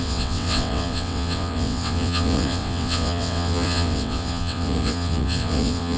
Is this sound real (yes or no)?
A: no